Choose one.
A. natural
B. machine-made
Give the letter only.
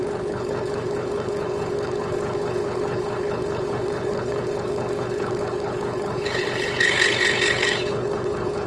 B